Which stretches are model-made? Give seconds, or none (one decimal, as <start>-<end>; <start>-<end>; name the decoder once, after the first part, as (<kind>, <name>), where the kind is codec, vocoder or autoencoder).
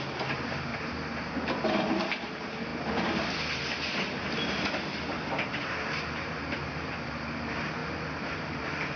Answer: 0.0-0.7 (vocoder, BigVGAN v2); 2.3-2.7; 5.6-9.0